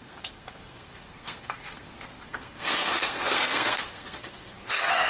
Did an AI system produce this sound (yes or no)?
yes